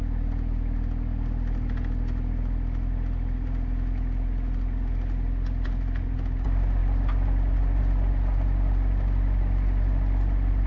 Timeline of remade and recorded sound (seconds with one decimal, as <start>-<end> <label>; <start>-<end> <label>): 0.0-10.7 recorded